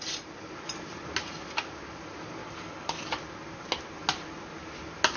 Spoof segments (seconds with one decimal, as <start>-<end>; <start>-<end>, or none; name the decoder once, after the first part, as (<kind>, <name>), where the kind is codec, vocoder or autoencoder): 2.4-3.1 (codec, DAC)